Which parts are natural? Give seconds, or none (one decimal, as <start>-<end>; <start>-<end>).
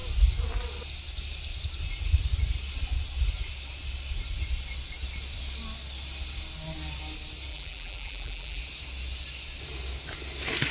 0.0-7.5; 8.6-10.7